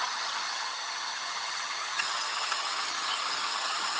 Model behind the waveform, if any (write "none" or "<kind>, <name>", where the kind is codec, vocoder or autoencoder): vocoder, HiFi-GAN